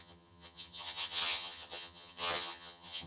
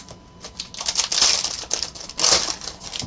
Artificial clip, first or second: first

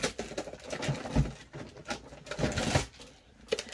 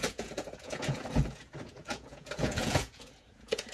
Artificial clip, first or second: second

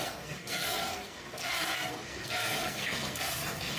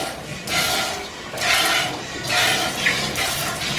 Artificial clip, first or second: first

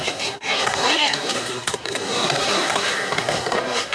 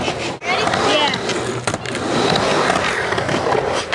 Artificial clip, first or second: first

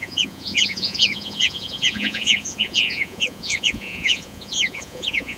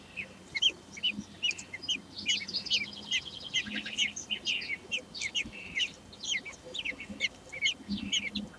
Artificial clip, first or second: first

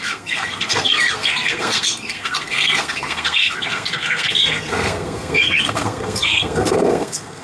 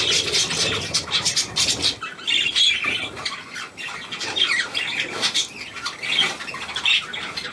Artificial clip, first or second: first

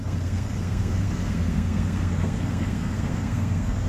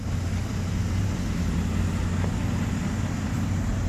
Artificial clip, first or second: first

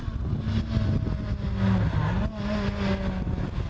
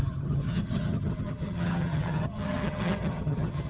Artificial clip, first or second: second